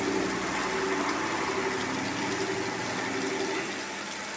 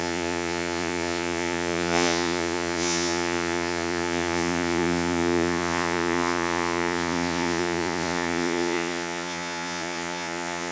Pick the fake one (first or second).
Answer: second